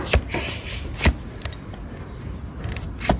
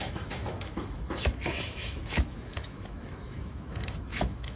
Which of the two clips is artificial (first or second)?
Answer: second